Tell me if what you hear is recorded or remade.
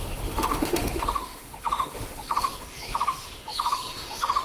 remade